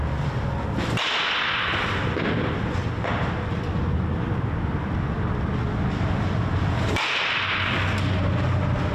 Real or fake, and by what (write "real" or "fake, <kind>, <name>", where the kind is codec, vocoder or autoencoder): real